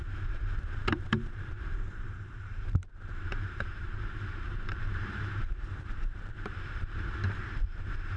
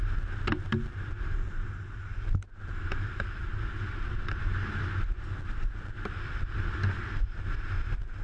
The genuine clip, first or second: second